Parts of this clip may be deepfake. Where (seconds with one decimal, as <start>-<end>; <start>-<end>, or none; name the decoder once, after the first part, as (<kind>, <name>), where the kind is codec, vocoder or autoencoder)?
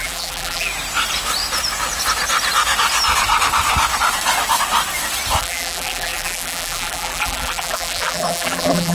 0.0-0.7 (vocoder, BigVGAN v2); 5.4-8.9